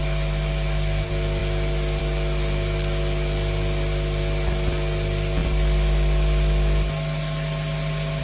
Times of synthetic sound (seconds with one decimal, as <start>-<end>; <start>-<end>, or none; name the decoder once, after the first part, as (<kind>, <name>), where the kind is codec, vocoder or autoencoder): none